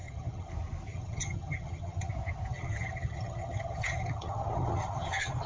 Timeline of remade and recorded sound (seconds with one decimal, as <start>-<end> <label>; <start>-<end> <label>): 0.0-0.5 remade; 0.5-0.9 recorded; 0.9-2.1 remade; 2.1-2.5 recorded; 2.5-5.5 remade